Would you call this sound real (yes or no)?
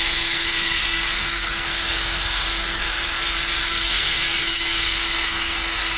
no